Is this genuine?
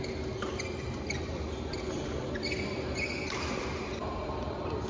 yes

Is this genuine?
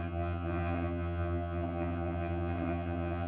no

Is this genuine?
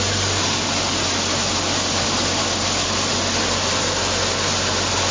yes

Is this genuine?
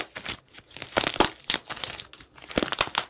yes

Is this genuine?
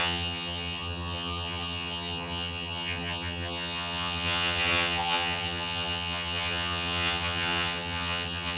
no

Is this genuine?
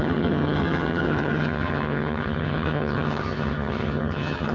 no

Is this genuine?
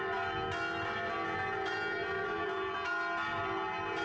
yes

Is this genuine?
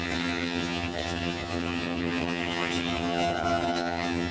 no